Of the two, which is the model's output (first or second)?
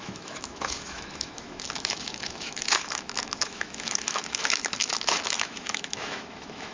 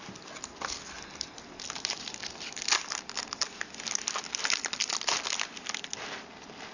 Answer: first